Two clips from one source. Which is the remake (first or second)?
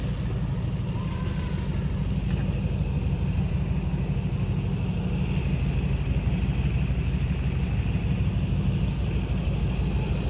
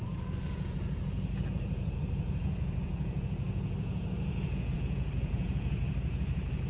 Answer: second